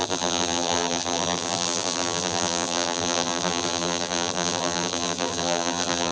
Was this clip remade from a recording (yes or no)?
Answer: yes